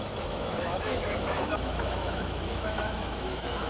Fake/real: fake